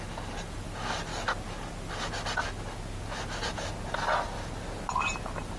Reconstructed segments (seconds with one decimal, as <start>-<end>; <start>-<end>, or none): none